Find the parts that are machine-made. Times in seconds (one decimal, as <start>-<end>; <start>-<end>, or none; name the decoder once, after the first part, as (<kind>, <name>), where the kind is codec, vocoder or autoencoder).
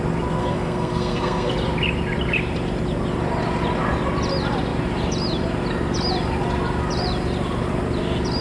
0.4-1.5 (codec, SNAC)